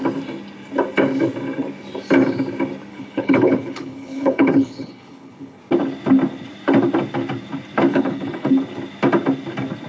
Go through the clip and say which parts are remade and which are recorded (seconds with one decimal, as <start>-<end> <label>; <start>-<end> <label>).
0.0-2.9 recorded; 2.9-5.6 remade; 5.6-7.9 recorded; 7.9-8.5 remade; 8.5-9.9 recorded